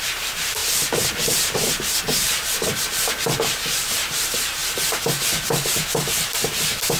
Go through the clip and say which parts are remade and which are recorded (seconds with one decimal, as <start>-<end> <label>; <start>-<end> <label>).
0.0-4.6 remade; 4.6-5.9 recorded; 5.9-7.0 remade